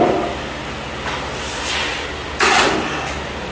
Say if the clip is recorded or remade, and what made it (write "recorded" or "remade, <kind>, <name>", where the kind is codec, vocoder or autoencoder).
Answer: recorded